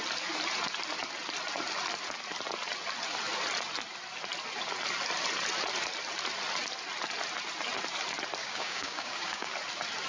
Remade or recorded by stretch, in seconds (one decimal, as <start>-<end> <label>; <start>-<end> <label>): 0.0-8.4 recorded; 8.4-9.5 remade; 9.5-10.1 recorded